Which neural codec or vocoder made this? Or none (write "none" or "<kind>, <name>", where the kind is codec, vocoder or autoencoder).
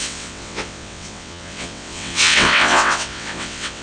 vocoder, WaveNeXt